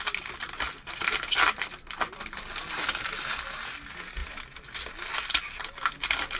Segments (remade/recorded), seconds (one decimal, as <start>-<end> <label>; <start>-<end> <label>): 0.0-6.4 recorded